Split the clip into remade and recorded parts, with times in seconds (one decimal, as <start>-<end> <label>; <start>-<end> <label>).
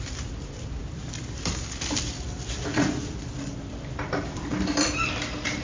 0.0-5.6 remade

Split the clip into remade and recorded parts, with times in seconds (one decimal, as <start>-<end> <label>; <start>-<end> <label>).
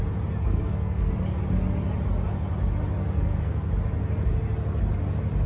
0.0-0.4 recorded; 0.4-1.1 remade; 1.1-3.0 recorded; 3.0-3.7 remade; 3.7-5.5 recorded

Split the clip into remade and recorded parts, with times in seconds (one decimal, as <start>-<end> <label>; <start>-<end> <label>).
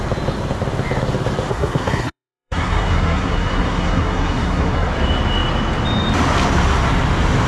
0.0-1.5 recorded; 1.5-4.9 remade; 4.9-7.5 recorded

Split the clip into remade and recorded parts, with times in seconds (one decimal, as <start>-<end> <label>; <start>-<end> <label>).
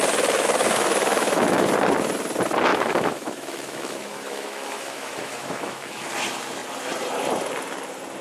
0.0-0.6 recorded; 0.6-1.7 remade; 1.7-2.7 recorded; 2.7-6.1 remade; 6.1-8.2 recorded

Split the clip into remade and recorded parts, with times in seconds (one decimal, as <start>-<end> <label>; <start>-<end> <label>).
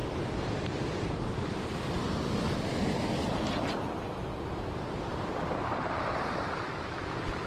0.0-1.2 remade; 1.2-5.1 recorded; 5.1-6.6 remade; 6.6-7.5 recorded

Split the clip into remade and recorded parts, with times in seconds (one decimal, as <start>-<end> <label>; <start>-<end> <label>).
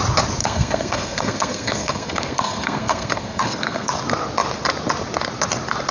0.0-0.4 recorded; 0.4-3.9 remade; 3.9-5.9 recorded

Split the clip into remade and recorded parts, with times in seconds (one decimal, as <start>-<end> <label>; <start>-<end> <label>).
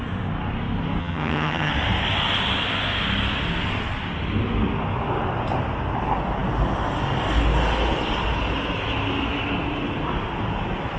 0.0-1.0 recorded; 1.0-1.7 remade; 1.7-11.0 recorded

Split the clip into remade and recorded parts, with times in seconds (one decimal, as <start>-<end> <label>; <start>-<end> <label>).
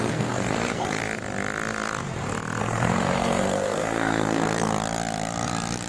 0.0-1.0 remade; 1.0-2.6 recorded; 2.6-4.7 remade; 4.7-5.9 recorded